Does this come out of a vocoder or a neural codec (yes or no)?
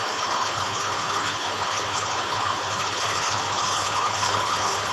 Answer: yes